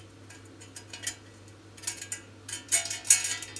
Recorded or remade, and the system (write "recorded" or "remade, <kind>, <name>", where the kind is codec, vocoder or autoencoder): recorded